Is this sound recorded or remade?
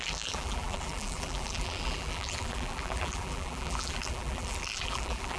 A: remade